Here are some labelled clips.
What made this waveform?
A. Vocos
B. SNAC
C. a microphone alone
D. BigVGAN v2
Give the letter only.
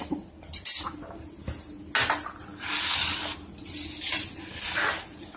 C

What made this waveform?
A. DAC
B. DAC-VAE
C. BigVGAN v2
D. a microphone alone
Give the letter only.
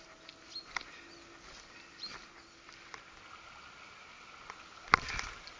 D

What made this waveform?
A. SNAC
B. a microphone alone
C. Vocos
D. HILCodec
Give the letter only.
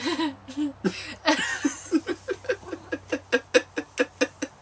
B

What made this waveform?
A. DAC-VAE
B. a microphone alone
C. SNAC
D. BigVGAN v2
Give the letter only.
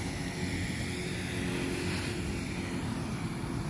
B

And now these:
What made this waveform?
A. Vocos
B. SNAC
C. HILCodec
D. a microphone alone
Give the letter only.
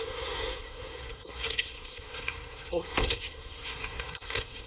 B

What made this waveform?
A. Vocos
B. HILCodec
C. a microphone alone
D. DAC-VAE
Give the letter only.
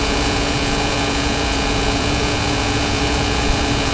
A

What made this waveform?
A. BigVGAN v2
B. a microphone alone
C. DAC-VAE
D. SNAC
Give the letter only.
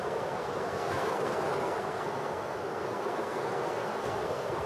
D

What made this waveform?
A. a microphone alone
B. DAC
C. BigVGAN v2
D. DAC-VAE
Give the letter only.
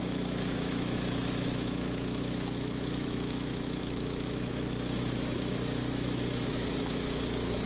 D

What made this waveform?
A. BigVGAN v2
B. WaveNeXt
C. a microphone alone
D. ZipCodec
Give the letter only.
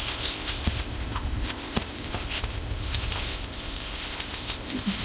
D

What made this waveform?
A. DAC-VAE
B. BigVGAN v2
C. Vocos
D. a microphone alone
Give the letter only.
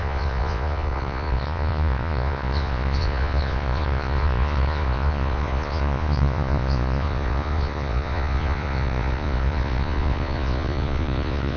C